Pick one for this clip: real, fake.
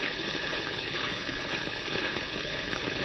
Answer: fake